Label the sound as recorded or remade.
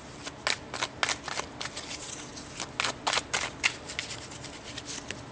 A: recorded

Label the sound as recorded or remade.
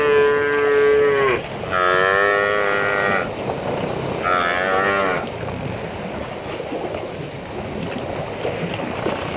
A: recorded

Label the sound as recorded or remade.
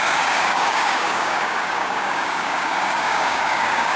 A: remade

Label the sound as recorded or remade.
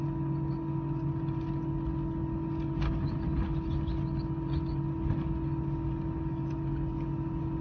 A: recorded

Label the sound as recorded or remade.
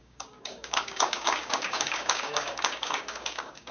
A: remade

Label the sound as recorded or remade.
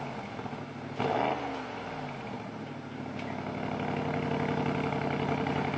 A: recorded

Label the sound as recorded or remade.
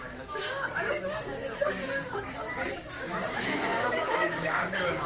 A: remade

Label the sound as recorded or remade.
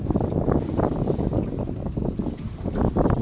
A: recorded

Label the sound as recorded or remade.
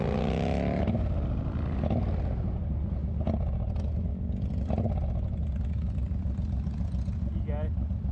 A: recorded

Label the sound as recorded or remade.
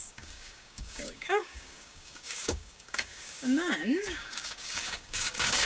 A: remade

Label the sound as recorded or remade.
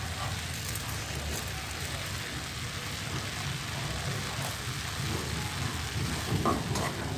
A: recorded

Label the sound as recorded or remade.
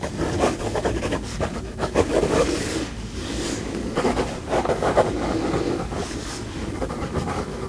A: remade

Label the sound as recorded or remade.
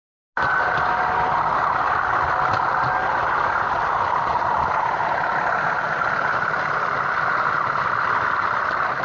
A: recorded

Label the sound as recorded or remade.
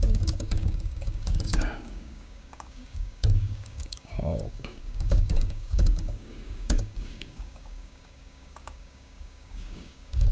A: remade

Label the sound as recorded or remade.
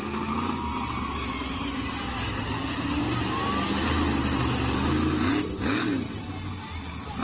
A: recorded